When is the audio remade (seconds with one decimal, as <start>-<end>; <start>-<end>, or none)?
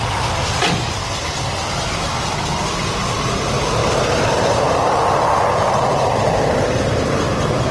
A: 3.8-6.3